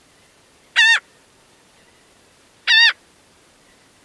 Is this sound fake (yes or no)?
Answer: yes